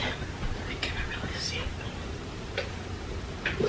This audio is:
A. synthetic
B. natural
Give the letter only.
B